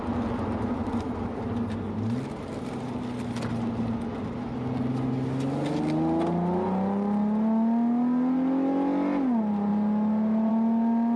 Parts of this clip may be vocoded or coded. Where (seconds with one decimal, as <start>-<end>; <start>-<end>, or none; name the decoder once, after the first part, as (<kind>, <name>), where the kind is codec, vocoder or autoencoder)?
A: none